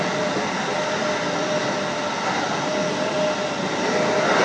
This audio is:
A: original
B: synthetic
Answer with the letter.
A